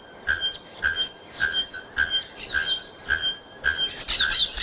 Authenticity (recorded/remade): recorded